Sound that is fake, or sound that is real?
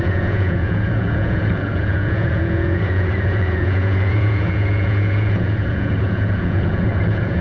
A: fake